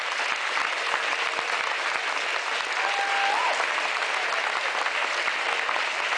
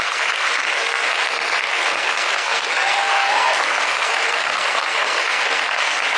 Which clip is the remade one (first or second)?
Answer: second